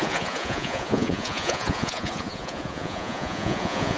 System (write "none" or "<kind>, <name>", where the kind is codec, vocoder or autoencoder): vocoder, Vocos